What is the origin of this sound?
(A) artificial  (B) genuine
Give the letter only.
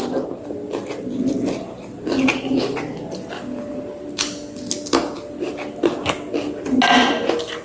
B